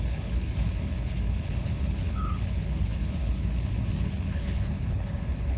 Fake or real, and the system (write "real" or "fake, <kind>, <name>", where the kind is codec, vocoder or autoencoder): fake, codec, HILCodec